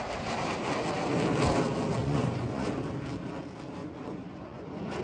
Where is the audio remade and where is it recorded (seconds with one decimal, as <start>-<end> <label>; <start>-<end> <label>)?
0.0-2.0 recorded; 2.0-2.7 remade; 2.7-3.8 recorded; 3.8-5.0 remade